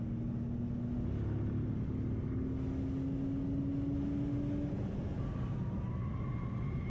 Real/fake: real